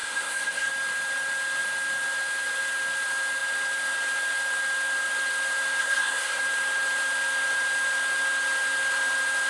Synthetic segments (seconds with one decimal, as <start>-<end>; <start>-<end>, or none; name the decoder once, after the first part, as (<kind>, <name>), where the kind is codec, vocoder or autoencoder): 0.0-0.7 (codec, SNAC); 5.8-6.4